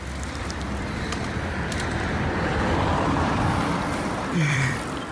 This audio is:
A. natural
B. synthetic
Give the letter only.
B